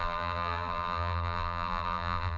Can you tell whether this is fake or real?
fake